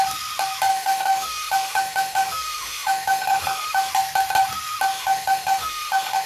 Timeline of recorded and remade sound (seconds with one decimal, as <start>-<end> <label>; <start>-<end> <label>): 0.0-0.7 recorded; 0.7-3.9 remade; 3.9-4.9 recorded; 4.9-6.3 remade

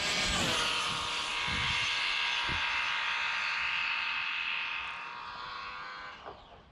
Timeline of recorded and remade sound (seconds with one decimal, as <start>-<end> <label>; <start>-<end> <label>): 0.0-6.7 recorded

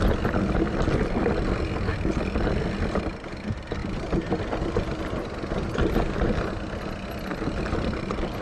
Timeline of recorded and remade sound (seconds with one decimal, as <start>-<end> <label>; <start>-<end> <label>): 0.0-8.4 recorded